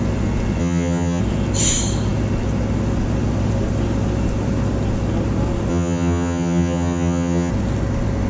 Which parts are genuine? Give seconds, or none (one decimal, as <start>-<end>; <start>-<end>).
0.0-0.6; 1.2-5.7; 7.5-8.3